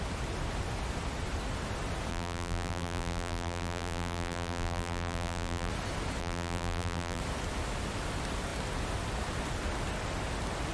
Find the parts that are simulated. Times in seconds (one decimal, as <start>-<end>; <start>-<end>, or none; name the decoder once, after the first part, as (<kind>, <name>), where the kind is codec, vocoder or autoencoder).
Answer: 2.1-5.7 (vocoder, BigVGAN v2); 6.2-7.2